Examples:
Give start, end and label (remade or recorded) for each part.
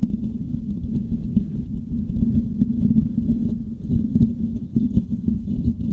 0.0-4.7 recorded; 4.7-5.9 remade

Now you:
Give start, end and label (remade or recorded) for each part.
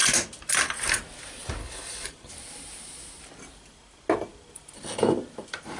0.0-1.6 recorded; 1.6-2.3 remade; 2.3-5.8 recorded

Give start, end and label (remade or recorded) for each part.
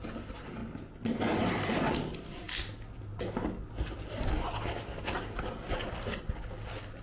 0.0-7.0 recorded